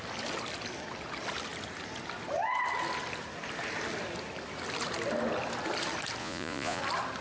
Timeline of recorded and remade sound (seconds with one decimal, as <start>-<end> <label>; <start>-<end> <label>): 0.0-6.2 recorded; 6.2-6.8 remade; 6.8-7.2 recorded

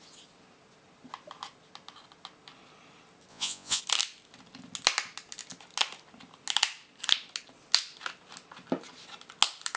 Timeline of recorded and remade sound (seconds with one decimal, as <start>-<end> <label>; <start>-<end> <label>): 0.0-3.3 recorded; 3.3-3.8 remade; 3.8-9.8 recorded

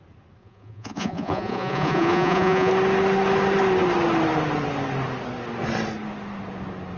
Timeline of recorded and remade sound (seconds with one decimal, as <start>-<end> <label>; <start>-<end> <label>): 0.0-0.4 recorded; 0.4-2.7 remade; 2.7-7.0 recorded

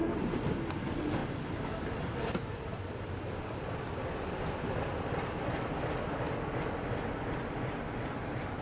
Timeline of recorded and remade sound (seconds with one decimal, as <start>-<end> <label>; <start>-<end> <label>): 0.0-8.6 recorded

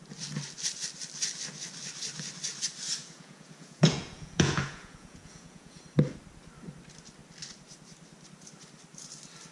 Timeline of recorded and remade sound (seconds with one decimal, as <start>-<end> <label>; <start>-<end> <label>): 0.0-3.0 recorded; 3.0-5.8 remade; 5.8-9.5 recorded